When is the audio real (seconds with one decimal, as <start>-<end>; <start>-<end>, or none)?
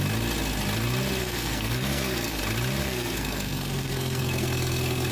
0.0-1.2; 2.4-2.8